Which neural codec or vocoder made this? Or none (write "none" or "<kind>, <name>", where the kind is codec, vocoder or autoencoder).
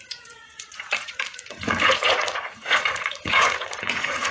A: vocoder, Vocos